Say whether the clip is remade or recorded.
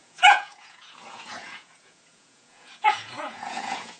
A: remade